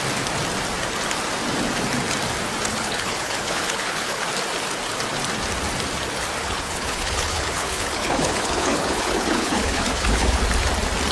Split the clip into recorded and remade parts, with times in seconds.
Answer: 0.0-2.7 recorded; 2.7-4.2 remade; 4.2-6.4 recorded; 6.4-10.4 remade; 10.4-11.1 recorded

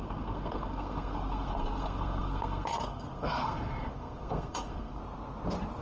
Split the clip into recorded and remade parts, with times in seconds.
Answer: 0.0-5.0 remade; 5.0-5.8 recorded